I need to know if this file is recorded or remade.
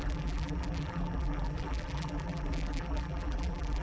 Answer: remade